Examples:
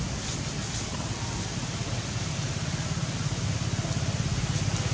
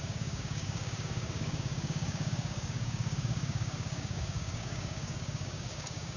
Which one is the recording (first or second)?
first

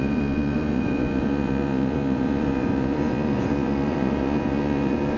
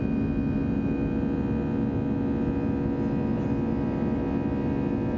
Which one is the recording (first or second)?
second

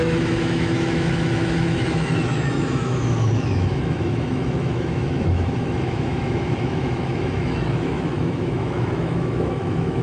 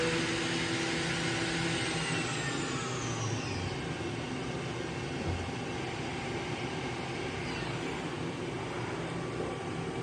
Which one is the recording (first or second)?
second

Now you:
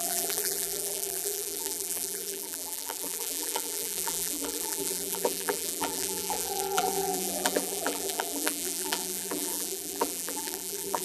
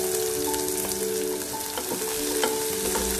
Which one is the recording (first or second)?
second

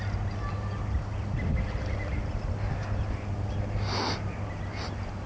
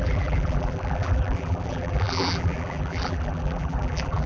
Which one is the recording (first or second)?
first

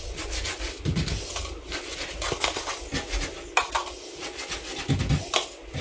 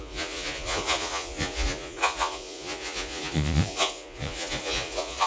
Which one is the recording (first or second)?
first